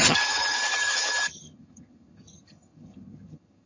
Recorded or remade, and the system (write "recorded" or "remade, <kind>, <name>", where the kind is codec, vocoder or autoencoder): remade, vocoder, HiFi-GAN